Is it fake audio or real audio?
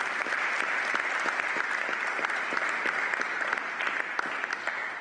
real